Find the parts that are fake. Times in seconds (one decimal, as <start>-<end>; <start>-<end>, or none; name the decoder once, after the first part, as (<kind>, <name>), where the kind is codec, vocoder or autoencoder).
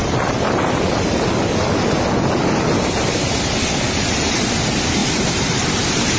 5.0-6.2 (vocoder, BigVGAN v2)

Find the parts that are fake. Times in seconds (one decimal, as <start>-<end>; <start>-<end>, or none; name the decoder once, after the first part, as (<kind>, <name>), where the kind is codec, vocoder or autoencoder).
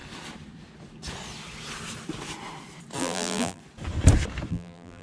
3.0-3.6 (vocoder, BigVGAN v2); 4.5-5.0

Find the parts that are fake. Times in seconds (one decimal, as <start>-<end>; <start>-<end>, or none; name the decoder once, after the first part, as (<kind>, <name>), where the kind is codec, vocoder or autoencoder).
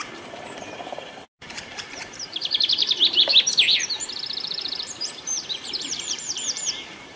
0.0-3.3 (vocoder, BigVGAN v2); 3.8-7.2